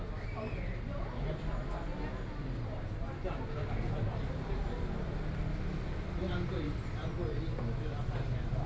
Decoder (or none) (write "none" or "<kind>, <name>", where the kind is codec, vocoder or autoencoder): none